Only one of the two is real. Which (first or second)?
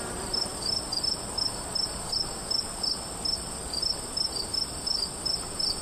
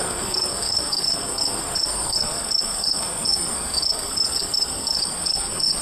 first